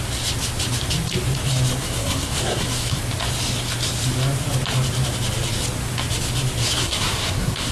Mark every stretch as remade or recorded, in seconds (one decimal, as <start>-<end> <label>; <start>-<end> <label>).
0.0-1.8 recorded; 1.8-3.0 remade; 3.0-6.6 recorded; 6.6-7.7 remade